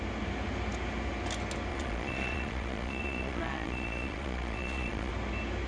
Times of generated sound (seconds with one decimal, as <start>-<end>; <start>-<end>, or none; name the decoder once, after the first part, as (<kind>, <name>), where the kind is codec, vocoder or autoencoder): 1.7-5.1 (vocoder, Vocos)